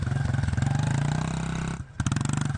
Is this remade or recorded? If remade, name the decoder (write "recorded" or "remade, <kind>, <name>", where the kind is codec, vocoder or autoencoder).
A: recorded